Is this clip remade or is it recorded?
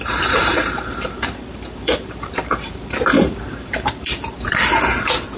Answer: remade